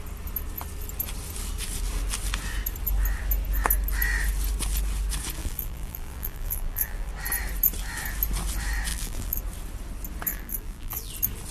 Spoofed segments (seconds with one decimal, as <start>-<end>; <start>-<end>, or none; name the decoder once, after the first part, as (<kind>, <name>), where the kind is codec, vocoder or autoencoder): 5.4-7.1 (vocoder, BigVGAN v2); 8.9-9.4; 10.3-11.1